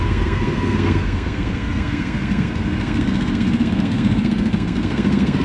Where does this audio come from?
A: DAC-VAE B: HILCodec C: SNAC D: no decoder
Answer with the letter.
C